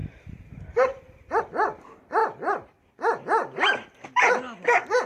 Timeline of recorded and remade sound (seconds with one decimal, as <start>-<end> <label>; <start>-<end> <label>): 0.0-1.4 remade; 1.4-2.2 recorded; 2.2-2.8 remade; 2.8-3.4 recorded; 3.4-5.1 remade